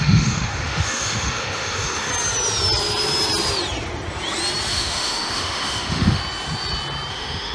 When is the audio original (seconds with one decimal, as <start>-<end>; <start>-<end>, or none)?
2.1-4.7; 6.2-7.1